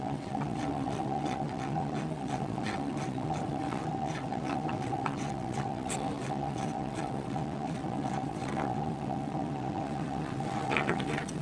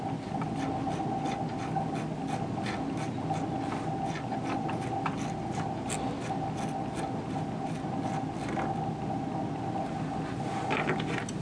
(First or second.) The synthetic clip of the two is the first